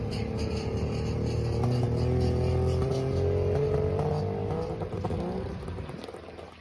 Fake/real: real